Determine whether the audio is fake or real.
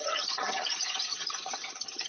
fake